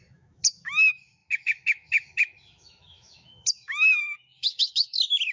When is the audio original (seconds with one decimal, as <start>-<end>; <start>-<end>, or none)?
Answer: none